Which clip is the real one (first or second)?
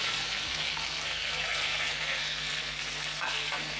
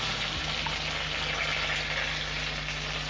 second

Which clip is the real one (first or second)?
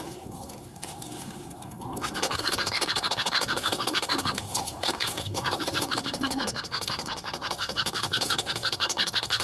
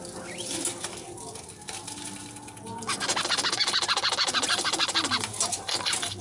second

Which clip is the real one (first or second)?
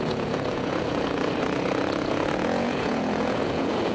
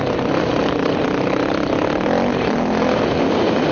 second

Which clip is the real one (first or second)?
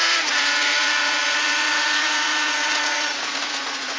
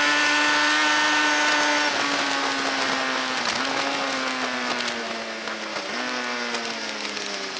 second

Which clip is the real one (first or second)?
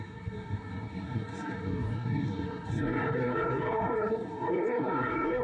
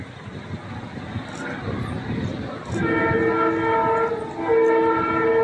second